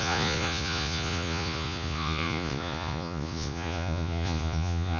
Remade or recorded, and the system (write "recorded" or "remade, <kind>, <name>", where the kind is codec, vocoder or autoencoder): remade, vocoder, Vocos